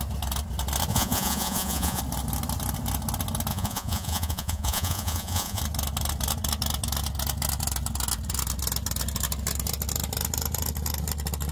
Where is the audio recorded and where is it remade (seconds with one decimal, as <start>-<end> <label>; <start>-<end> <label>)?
0.0-0.9 recorded; 0.9-2.0 remade; 2.0-3.5 recorded; 3.5-5.6 remade; 5.6-11.5 recorded